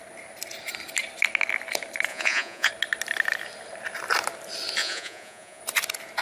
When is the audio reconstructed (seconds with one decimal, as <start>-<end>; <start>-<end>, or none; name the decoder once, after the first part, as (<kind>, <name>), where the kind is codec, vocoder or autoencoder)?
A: 2.1-2.7 (vocoder, Vocos); 4.8-5.6